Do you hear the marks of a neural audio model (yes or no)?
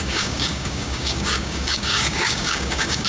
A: yes